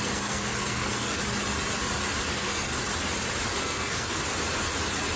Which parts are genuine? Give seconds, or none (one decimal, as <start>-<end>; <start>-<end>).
1.2-2.3; 2.7-3.6; 4.2-5.2